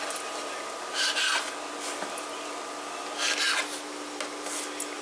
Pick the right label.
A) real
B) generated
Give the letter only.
A